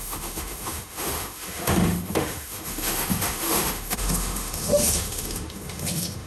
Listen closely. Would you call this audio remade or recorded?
remade